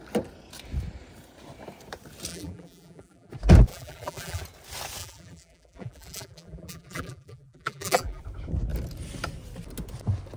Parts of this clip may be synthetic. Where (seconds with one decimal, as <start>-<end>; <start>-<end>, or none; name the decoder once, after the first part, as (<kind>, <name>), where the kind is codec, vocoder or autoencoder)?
2.3-3.3 (vocoder, BigVGAN v2); 3.7-4.4; 5.0-8.2